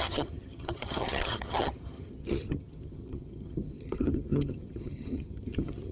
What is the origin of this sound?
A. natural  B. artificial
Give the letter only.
B